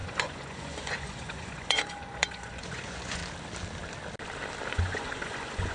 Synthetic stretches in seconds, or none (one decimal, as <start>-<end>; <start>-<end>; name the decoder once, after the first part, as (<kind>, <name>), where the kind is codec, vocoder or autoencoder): 0.0-3.2 (vocoder, Vocos); 4.7-5.7